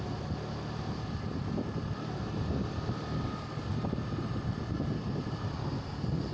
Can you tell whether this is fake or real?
real